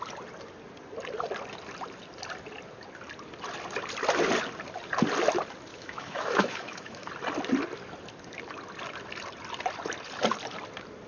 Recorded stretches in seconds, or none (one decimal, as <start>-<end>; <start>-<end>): 0.0-5.7; 7.1-11.1